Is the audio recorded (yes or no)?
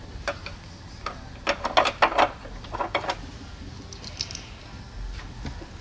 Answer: yes